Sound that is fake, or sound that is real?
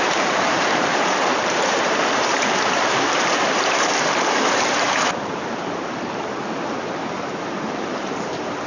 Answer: fake